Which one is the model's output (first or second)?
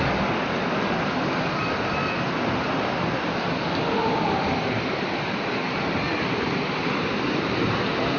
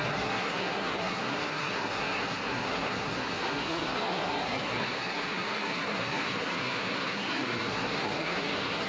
second